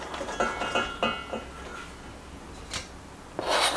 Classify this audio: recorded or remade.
recorded